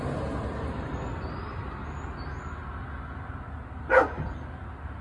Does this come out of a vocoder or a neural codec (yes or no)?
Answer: no